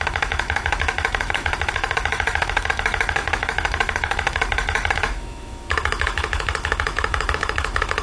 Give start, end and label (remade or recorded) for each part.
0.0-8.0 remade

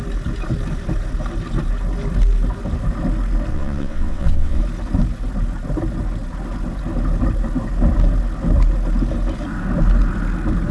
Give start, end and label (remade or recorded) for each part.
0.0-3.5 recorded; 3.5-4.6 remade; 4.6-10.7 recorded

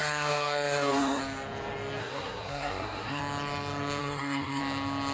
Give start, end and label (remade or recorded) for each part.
0.0-1.2 remade; 1.2-2.0 recorded; 2.0-3.2 remade; 3.2-4.0 recorded; 4.0-4.6 remade; 4.6-5.1 recorded